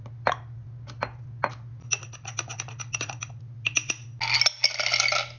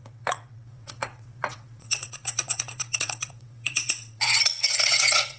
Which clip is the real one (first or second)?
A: first